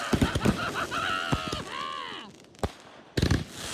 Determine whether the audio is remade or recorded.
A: recorded